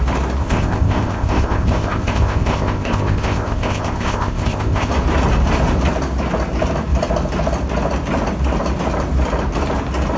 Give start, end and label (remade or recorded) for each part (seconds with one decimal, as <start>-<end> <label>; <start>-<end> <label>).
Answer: 0.0-0.4 recorded; 0.4-4.9 remade; 4.9-10.2 recorded